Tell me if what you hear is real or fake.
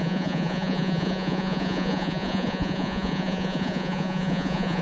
fake